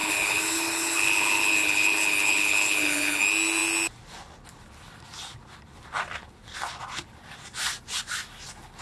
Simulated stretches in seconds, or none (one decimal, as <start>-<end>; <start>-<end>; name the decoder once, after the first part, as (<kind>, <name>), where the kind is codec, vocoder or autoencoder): 0.0-3.2 (codec, HILCodec)